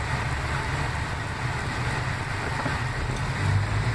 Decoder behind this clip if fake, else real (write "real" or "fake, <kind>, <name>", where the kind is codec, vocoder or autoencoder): real